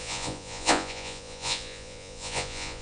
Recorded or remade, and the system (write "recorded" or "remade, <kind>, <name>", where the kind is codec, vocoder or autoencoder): remade, vocoder, Vocos